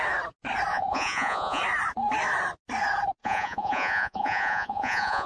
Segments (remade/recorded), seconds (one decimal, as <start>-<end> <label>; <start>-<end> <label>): 0.0-0.7 recorded; 0.7-1.6 remade; 1.6-3.2 recorded; 3.2-5.3 remade